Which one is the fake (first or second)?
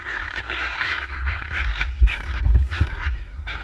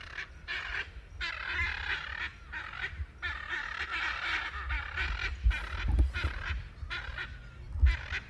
first